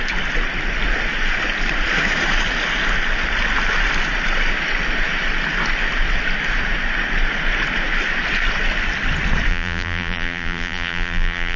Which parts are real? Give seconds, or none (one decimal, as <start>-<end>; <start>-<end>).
0.0-9.5